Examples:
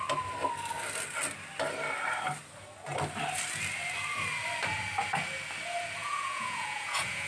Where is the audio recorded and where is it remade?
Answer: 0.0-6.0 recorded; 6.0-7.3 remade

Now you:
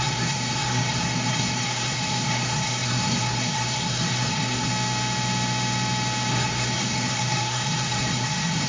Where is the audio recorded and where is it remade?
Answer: 0.0-4.7 remade; 4.7-6.3 recorded; 6.3-8.7 remade

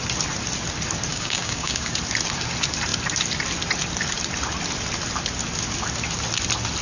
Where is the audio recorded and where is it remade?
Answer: 0.0-1.1 recorded; 1.1-1.9 remade; 1.9-6.8 recorded

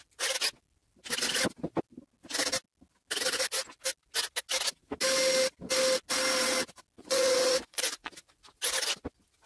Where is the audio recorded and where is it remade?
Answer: 0.0-7.0 recorded; 7.0-8.1 remade; 8.1-9.5 recorded

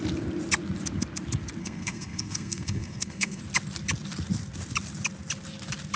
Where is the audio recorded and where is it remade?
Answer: 0.0-1.6 recorded; 1.6-3.4 remade; 3.4-6.0 recorded